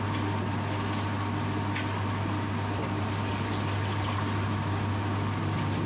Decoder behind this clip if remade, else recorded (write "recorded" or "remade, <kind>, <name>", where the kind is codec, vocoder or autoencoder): recorded